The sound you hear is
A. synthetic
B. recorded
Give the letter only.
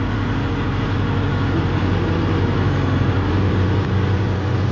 B